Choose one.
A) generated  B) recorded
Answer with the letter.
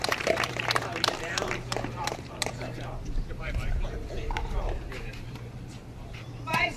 A